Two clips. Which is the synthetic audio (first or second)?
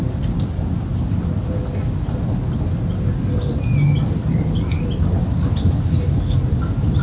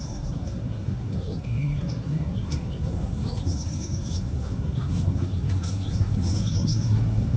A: second